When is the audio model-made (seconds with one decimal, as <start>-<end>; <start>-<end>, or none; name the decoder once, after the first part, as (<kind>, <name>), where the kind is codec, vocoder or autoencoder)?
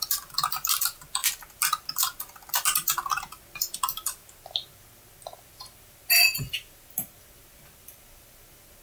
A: none